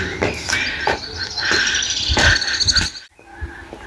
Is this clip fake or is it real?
real